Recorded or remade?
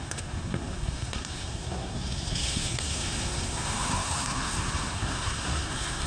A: remade